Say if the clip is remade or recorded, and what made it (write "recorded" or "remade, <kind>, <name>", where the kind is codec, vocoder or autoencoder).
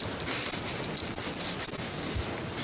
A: recorded